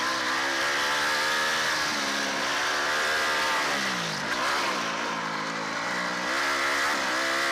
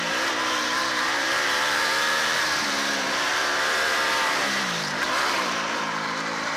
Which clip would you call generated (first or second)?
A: second